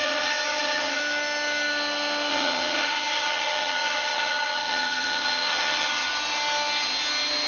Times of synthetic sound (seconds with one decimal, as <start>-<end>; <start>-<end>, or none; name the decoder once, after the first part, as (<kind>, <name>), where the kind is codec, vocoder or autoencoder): 0.0-1.0 (vocoder, HiFi-GAN); 2.3-6.1